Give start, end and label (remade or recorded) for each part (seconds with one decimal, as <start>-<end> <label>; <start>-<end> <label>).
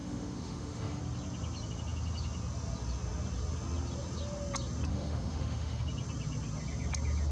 0.0-1.0 remade; 1.0-4.9 recorded; 4.9-5.8 remade; 5.8-7.3 recorded